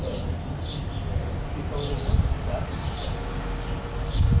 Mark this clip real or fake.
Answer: real